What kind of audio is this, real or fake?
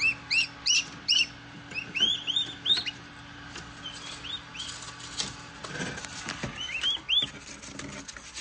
real